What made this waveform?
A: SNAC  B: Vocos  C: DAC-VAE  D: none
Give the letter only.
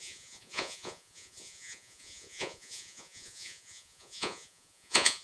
B